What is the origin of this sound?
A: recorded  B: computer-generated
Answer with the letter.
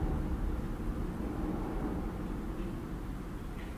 A